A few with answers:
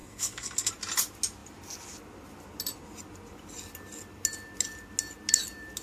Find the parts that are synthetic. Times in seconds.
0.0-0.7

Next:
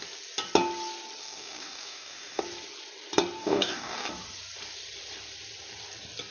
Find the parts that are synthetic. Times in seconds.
1.2-2.4; 3.4-4.1

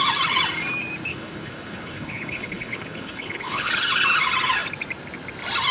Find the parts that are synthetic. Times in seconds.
1.1-3.7

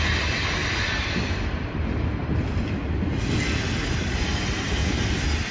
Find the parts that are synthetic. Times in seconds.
0.0-4.8

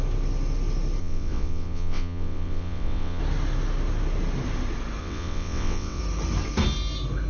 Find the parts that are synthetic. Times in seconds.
1.0-3.2; 5.0-6.0